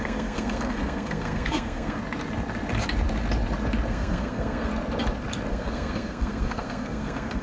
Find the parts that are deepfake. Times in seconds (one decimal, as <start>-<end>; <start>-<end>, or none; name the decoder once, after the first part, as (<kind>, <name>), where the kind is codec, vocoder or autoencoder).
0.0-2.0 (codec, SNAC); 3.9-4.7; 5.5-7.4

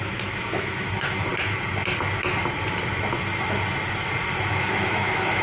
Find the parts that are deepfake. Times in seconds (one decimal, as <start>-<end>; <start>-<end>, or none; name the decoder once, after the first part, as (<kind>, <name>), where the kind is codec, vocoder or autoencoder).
0.0-1.3 (autoencoder, DAC-VAE); 4.5-5.4

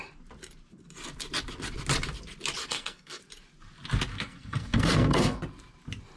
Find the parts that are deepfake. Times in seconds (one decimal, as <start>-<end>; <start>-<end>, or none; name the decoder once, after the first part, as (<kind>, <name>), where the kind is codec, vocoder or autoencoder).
2.6-3.2 (codec, SNAC); 4.1-5.4

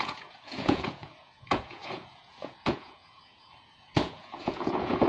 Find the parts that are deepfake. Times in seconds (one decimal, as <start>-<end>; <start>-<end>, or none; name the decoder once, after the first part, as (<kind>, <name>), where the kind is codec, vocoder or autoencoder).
0.0-5.1 (vocoder, Vocos)